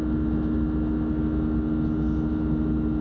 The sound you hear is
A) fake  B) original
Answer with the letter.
B